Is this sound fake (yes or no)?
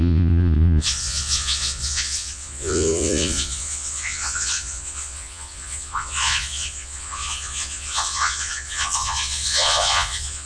yes